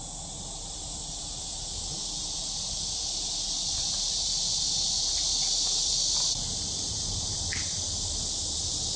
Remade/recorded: recorded